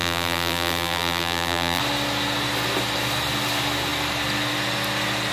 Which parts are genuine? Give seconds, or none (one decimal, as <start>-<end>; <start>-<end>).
1.8-5.3